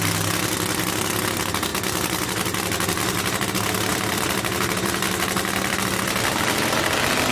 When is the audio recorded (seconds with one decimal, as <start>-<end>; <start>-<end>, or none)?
0.0-1.7; 3.5-3.9; 6.8-7.3